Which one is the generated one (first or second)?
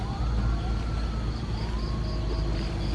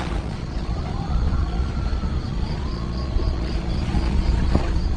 second